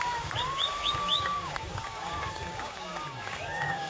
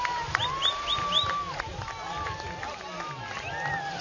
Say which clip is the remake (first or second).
first